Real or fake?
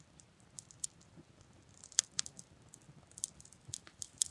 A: real